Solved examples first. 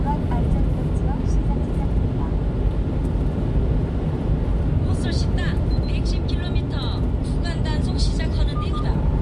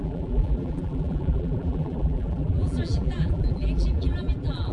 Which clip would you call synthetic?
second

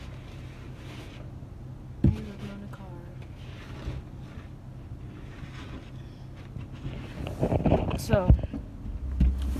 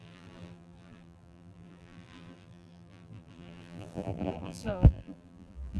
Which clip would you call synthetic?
second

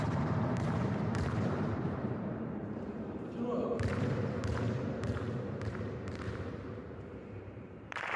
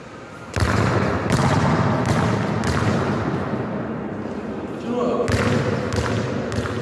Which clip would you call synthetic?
first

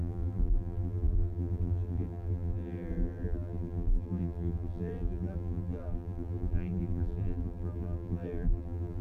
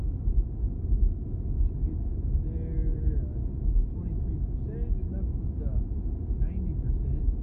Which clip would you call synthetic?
first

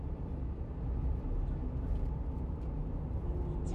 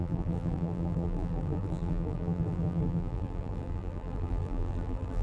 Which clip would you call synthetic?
second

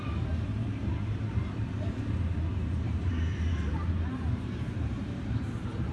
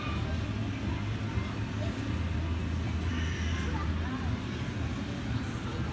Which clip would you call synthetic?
first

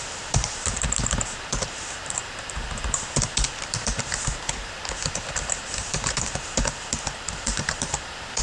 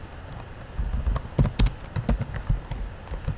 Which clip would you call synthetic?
first